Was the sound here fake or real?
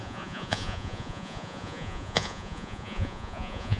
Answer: fake